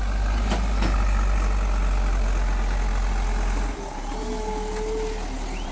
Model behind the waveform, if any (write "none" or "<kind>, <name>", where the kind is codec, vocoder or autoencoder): none